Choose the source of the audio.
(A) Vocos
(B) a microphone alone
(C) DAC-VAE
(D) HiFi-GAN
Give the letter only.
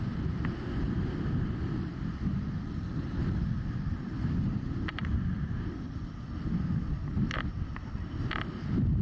B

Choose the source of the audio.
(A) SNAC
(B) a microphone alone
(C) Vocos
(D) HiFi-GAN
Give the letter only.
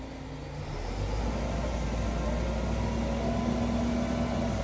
B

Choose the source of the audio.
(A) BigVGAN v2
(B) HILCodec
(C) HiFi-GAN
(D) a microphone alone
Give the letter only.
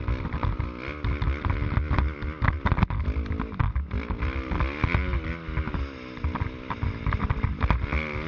D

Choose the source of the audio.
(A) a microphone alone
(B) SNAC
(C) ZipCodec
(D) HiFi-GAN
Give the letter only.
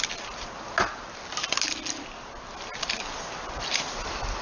A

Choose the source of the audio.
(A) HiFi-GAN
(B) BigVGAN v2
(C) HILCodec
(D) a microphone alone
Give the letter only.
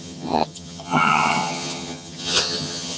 A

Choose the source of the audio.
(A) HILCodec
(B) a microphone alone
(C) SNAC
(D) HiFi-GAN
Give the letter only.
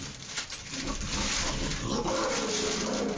B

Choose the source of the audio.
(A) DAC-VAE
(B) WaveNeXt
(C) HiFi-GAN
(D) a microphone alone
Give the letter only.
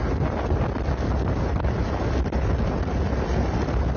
D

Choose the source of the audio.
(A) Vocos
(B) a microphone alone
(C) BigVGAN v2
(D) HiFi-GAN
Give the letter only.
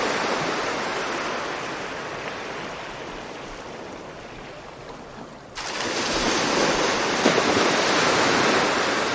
B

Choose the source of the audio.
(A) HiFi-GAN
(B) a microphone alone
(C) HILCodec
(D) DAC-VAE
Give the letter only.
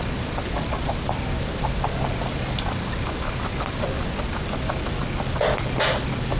B